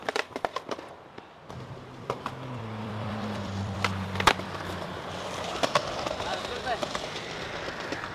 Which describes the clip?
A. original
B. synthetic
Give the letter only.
B